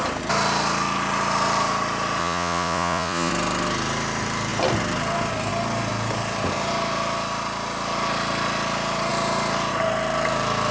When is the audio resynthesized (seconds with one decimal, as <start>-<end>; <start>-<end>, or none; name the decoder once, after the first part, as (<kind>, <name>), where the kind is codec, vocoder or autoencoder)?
2.2-3.3 (vocoder, Vocos)